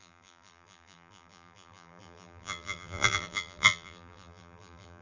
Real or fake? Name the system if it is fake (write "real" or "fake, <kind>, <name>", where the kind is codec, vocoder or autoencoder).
fake, vocoder, BigVGAN v2